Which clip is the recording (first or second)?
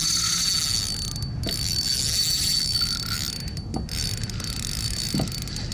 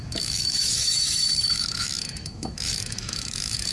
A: first